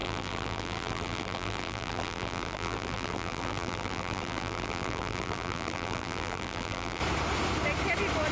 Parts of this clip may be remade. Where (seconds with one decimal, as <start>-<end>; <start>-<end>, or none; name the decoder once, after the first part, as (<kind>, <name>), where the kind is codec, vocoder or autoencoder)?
0.0-7.0 (vocoder, BigVGAN v2)